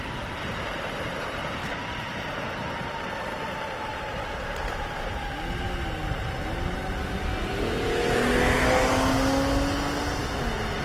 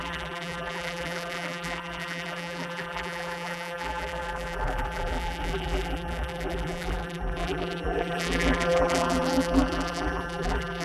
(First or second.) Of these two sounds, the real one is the first